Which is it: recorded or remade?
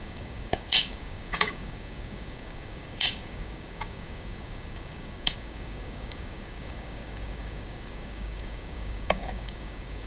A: remade